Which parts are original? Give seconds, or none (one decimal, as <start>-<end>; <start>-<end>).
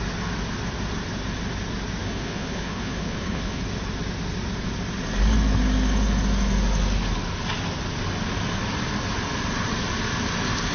0.0-2.0; 3.6-10.7